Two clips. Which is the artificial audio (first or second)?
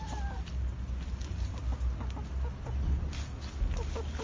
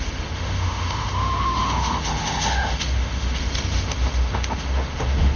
second